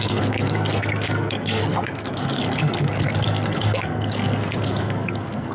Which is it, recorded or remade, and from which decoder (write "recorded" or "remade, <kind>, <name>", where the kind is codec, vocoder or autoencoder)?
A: remade, codec, SNAC